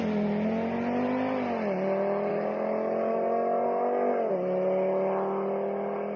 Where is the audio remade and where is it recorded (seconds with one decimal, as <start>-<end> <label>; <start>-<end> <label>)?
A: 0.0-2.3 recorded; 2.3-4.3 remade; 4.3-6.2 recorded